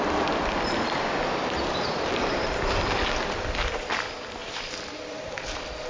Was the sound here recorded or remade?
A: remade